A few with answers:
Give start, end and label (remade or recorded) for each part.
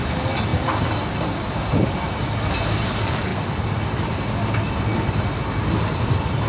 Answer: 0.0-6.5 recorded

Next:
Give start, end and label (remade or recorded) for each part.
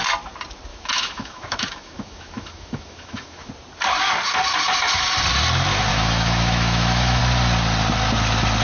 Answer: 0.0-0.7 recorded; 0.7-3.5 remade; 3.5-5.9 recorded; 5.9-7.2 remade; 7.2-8.6 recorded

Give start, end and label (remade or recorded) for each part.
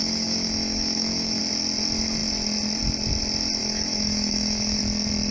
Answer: 0.0-1.4 remade; 1.4-3.6 recorded; 3.6-4.8 remade; 4.8-5.3 recorded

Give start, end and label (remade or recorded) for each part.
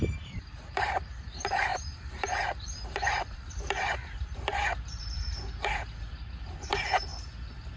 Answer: 0.0-7.1 remade; 7.1-7.8 recorded